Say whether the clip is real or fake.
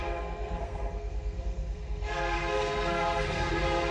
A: fake